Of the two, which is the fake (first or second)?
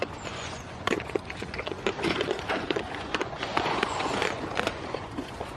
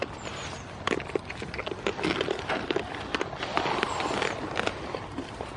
first